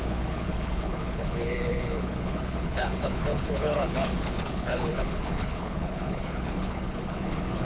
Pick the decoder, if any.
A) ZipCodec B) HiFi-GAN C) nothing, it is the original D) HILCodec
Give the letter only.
D